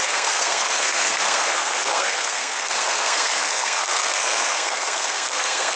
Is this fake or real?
fake